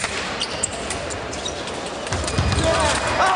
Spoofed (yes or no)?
no